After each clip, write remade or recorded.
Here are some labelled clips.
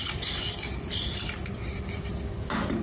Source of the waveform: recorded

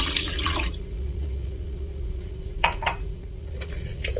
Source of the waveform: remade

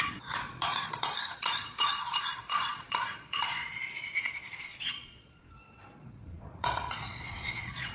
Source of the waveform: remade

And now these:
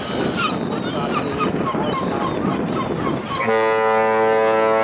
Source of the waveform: recorded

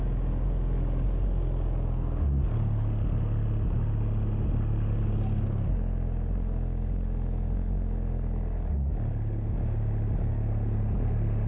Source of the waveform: recorded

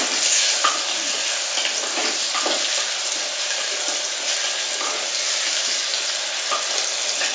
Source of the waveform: recorded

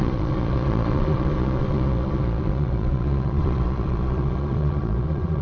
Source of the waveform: remade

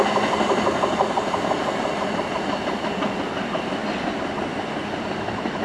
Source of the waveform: recorded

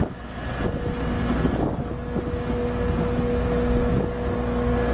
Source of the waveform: recorded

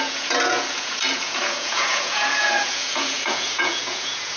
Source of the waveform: remade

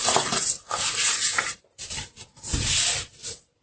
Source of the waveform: recorded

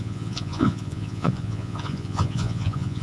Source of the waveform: remade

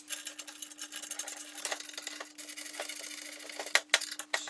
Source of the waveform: recorded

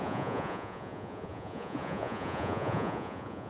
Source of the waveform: remade